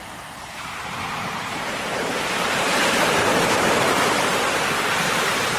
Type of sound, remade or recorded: remade